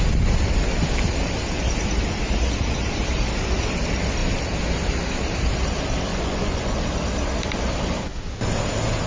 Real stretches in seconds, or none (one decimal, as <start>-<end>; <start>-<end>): 0.0-6.1; 6.8-9.1